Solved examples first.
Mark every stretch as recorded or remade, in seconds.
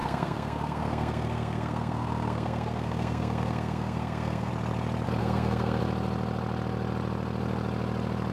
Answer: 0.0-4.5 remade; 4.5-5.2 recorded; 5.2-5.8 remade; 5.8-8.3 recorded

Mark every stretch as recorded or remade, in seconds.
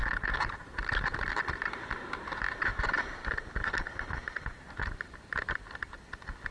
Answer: 0.0-2.7 recorded; 2.7-3.7 remade; 3.7-6.5 recorded